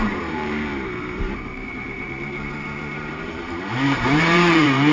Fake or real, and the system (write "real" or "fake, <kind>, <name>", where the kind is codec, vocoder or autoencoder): fake, vocoder, BigVGAN v2